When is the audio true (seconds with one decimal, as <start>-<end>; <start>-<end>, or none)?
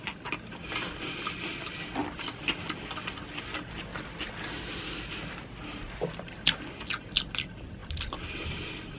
0.0-9.0